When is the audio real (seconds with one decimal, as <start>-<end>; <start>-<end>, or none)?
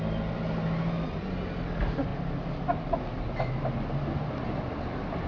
0.0-5.3